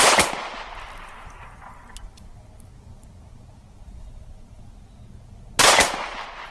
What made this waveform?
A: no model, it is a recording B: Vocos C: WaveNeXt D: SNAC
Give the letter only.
A